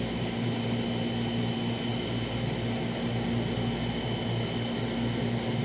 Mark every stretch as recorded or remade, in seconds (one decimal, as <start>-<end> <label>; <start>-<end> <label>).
0.0-5.6 recorded